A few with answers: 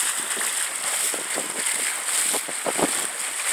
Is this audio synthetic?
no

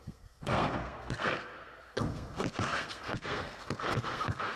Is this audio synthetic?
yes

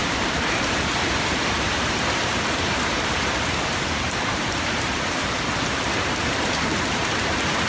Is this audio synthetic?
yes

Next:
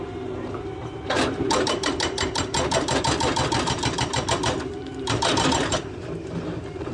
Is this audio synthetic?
yes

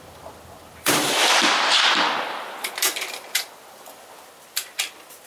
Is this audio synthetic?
yes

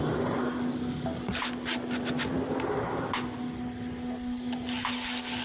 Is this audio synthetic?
no